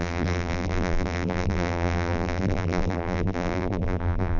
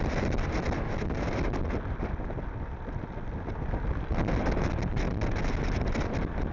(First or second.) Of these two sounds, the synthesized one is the first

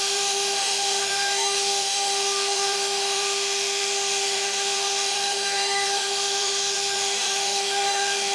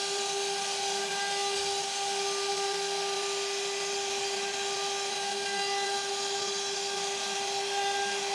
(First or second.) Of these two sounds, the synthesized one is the first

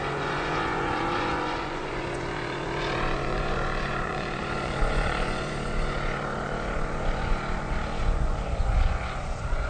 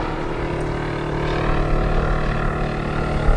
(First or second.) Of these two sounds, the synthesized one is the first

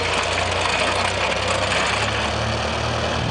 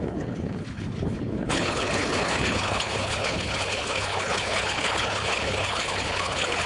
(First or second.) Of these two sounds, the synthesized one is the second